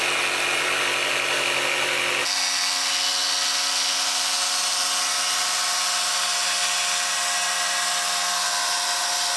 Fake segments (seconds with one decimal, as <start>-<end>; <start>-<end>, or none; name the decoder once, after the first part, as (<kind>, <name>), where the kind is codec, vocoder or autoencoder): none